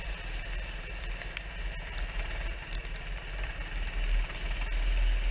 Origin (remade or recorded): recorded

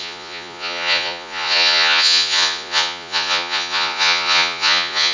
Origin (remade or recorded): remade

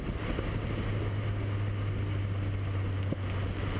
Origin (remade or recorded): recorded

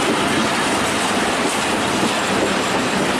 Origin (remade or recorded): recorded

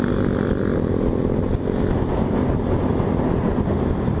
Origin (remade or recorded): recorded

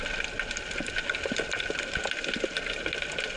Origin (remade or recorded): recorded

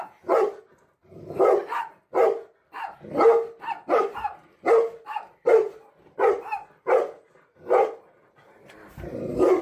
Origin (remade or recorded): recorded